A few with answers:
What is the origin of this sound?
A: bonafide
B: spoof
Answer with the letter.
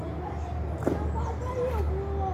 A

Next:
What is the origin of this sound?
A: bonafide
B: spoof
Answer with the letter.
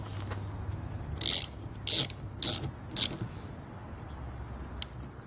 A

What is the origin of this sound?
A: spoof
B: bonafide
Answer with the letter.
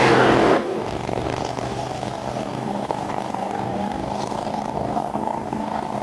A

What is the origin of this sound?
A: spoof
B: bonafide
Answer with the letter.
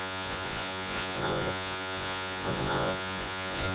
A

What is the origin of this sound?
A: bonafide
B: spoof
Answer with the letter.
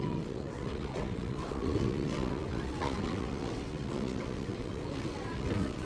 B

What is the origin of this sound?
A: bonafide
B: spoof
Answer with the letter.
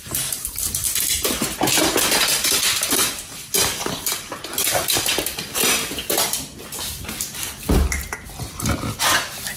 A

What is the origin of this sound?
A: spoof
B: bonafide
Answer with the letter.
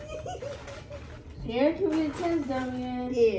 B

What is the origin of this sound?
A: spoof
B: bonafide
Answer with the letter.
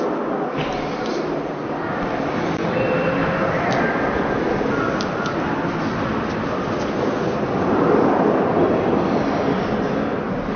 B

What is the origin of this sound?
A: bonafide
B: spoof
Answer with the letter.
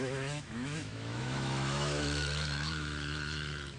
B